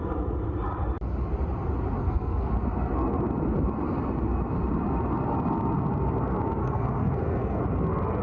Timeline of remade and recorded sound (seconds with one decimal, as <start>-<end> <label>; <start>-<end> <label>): 0.0-2.0 recorded; 2.0-2.5 remade; 2.5-6.6 recorded; 6.6-7.6 remade; 7.6-8.2 recorded